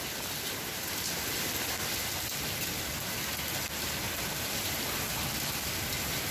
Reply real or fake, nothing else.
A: real